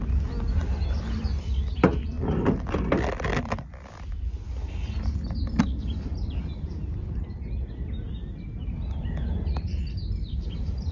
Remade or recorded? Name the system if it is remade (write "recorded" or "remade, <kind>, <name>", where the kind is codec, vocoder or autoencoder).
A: recorded